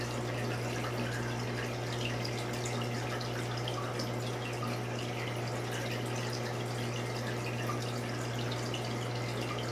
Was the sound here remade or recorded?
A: recorded